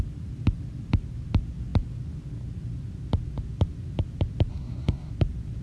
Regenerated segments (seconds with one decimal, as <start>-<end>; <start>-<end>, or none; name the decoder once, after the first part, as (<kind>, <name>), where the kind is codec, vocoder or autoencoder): 4.5-5.1 (codec, SNAC)